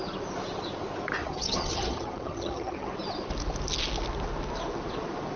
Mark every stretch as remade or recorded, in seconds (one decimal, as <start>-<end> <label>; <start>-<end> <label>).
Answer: 0.0-1.2 recorded; 1.2-2.9 remade; 2.9-5.4 recorded